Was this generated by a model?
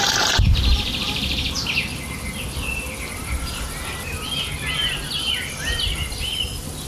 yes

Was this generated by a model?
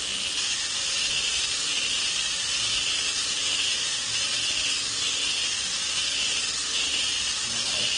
no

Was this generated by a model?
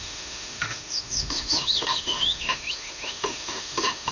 yes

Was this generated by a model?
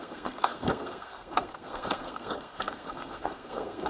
yes